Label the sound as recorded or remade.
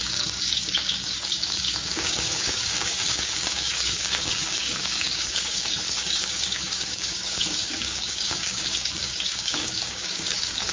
remade